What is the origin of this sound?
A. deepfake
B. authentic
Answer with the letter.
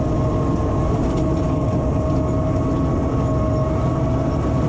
B